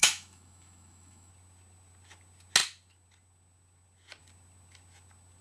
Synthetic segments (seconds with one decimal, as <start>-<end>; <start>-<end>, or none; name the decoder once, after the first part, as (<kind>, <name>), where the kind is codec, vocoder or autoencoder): 0.0-1.3 (autoencoder, DAC-VAE)